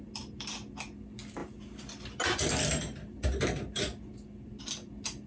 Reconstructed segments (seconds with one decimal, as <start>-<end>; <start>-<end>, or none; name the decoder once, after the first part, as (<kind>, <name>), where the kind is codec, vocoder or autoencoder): none